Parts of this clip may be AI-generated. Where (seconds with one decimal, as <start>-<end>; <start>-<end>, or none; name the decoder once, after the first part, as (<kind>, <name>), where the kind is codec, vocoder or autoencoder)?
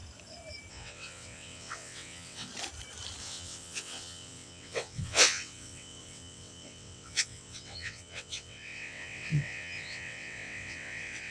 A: 0.7-2.5 (vocoder, WaveNeXt); 3.2-11.3